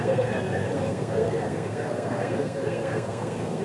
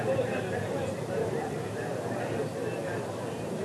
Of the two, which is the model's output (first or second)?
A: first